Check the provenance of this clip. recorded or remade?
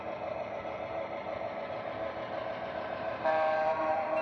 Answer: remade